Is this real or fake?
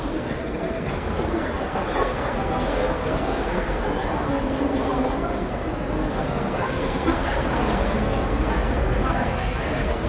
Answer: fake